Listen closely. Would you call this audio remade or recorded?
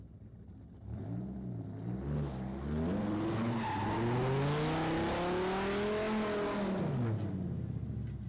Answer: recorded